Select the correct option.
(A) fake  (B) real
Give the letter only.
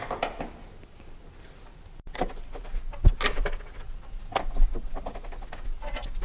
B